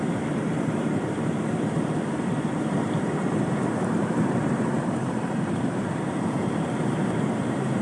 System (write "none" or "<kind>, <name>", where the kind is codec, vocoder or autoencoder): vocoder, BigVGAN v2